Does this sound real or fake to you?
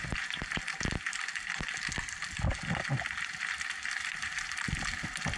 real